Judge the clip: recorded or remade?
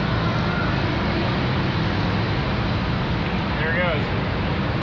recorded